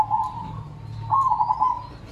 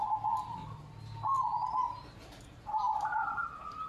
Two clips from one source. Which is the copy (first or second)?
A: first